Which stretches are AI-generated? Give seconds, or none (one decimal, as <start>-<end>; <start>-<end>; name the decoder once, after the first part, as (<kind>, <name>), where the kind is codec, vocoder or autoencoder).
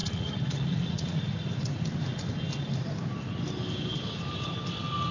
0.0-1.4 (vocoder, Vocos)